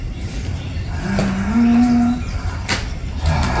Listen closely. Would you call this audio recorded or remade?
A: recorded